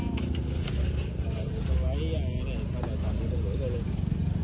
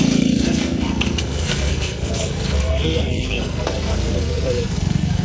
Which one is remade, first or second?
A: second